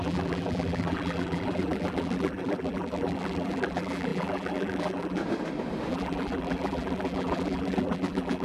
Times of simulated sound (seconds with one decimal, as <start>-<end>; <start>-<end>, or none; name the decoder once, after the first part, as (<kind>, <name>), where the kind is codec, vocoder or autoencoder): 0.0-5.2 (vocoder, BigVGAN v2); 5.9-8.4